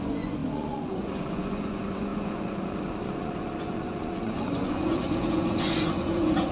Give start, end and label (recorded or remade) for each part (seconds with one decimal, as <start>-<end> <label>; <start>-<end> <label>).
0.0-6.5 remade